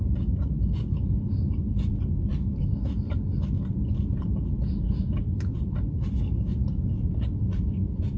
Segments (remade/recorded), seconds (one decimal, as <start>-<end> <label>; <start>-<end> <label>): 0.0-8.2 recorded

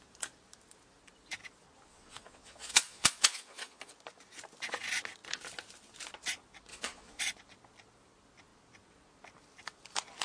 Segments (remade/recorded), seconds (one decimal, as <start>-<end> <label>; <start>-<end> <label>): 0.0-1.9 recorded; 1.9-3.9 remade; 3.9-6.7 recorded; 6.7-7.2 remade; 7.2-10.2 recorded

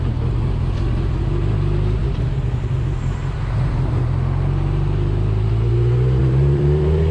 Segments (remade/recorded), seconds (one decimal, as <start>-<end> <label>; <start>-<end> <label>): 0.0-6.2 recorded; 6.2-7.1 remade

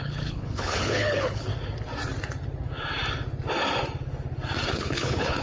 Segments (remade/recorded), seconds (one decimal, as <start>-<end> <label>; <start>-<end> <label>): 0.0-1.5 remade; 1.5-4.7 recorded; 4.7-5.4 remade

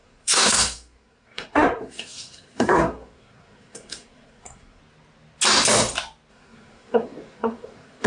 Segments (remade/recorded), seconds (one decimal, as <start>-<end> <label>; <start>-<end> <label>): 0.0-4.8 remade; 4.8-6.3 recorded; 6.3-8.1 remade